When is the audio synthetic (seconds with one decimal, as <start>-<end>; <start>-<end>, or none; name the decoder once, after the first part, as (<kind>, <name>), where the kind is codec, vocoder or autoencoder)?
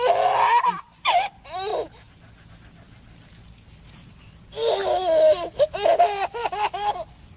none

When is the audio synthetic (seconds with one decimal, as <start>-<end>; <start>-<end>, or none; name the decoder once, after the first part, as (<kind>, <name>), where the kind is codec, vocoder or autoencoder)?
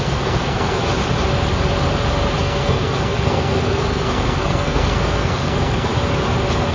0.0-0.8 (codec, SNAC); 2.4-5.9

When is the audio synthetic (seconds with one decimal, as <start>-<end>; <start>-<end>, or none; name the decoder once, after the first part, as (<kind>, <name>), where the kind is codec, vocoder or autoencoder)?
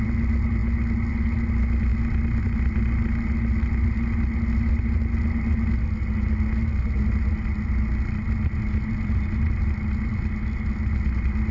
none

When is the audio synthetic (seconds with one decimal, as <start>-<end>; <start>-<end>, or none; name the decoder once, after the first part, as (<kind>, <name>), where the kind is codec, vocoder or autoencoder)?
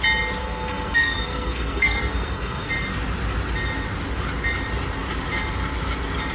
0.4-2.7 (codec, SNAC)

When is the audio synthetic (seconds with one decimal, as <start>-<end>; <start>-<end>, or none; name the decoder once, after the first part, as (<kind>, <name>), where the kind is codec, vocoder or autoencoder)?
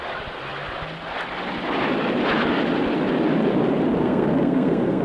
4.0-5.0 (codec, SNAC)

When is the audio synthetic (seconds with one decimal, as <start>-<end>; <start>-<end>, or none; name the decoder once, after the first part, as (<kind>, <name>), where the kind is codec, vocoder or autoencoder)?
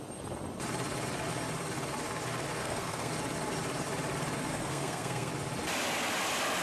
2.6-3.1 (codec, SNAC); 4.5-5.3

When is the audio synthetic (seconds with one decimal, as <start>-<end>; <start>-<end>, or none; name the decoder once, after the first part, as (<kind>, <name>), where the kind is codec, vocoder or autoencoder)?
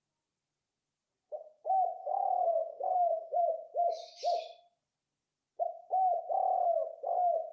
2.0-3.4 (codec, SNAC)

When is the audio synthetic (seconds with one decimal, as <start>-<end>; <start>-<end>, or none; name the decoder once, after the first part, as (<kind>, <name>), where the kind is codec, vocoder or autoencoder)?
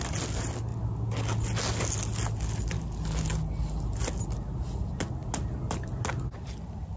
none